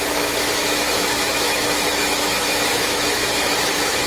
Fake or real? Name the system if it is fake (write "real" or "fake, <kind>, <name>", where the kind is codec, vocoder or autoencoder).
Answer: fake, autoencoder, DAC-VAE